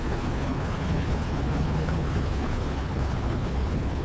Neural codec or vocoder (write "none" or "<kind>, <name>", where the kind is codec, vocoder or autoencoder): codec, HILCodec